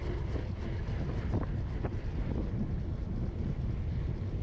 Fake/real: real